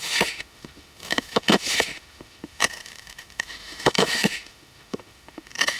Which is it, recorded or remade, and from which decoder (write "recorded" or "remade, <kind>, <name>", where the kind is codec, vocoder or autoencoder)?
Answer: remade, autoencoder, DAC-VAE